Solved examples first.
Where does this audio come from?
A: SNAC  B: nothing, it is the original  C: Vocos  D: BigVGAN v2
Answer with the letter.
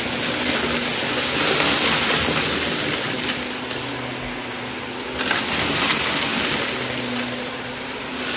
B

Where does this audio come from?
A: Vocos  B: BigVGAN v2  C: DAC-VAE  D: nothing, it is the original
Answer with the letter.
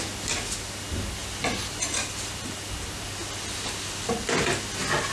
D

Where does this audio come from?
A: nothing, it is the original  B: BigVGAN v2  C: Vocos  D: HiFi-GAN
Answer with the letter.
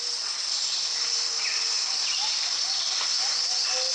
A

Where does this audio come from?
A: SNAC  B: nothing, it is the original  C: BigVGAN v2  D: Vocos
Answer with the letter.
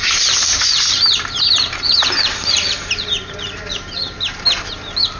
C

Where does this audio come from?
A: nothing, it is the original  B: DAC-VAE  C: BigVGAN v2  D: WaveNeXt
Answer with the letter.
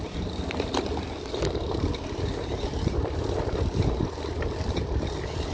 C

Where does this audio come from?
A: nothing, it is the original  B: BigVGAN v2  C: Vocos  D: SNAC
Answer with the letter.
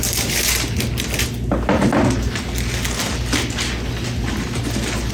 A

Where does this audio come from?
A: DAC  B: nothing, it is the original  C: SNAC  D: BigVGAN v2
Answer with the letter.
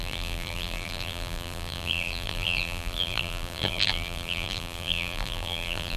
D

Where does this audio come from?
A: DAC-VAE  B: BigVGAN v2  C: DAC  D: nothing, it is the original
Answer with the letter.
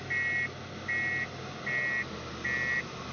D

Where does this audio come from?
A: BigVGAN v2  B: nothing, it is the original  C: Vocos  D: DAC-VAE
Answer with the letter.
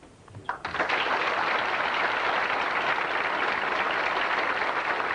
B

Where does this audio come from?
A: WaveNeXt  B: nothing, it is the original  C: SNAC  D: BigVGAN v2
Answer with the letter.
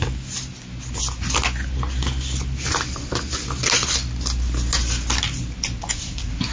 B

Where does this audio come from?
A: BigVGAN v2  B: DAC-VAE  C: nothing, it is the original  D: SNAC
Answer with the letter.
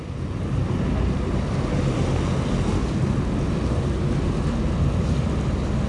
C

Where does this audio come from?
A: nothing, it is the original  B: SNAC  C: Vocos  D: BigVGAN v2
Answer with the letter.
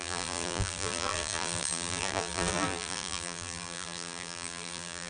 D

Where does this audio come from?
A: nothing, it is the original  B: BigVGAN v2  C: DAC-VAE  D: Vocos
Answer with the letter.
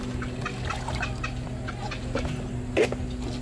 A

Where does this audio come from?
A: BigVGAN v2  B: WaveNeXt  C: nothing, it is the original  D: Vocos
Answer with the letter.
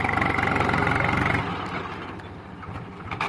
C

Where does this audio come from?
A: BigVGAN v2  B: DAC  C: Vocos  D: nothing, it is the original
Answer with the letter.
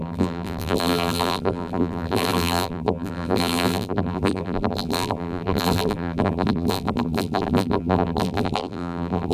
A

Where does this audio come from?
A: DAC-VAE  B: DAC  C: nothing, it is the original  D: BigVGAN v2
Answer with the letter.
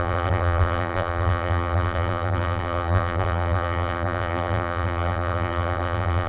D